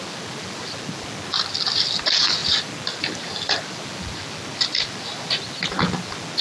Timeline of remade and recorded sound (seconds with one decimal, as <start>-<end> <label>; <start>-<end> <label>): 0.0-6.4 recorded